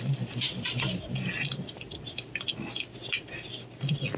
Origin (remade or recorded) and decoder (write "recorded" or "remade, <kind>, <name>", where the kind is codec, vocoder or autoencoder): recorded